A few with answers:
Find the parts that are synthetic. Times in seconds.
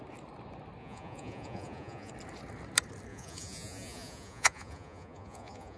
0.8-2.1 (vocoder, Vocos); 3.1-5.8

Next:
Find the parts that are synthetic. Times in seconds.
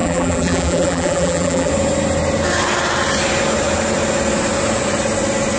0.0-1.7 (vocoder, BigVGAN v2)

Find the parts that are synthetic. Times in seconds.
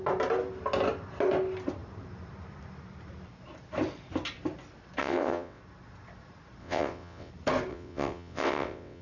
5.0-5.6 (vocoder, WaveNeXt); 6.6-7.3; 7.7-9.0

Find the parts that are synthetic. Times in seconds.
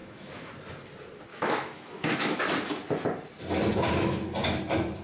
0.0-0.5 (autoencoder, DAC-VAE); 1.3-2.4